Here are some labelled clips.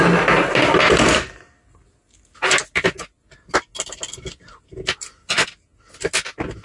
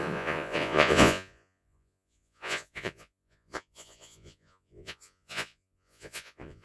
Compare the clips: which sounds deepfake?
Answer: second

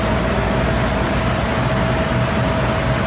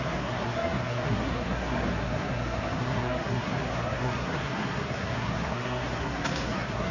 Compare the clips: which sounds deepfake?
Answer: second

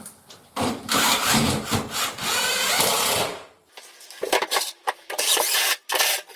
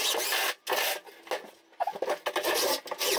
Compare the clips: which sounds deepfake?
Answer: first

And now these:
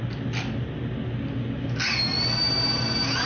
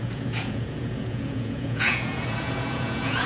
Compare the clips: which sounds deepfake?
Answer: second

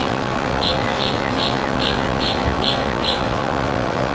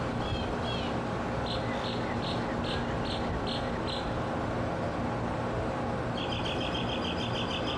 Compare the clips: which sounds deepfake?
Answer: first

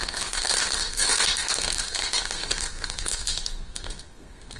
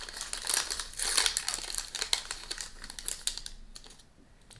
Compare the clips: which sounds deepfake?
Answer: first